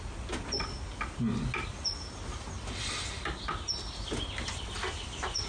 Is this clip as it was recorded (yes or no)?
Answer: yes